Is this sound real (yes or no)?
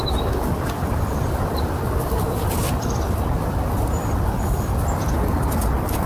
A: yes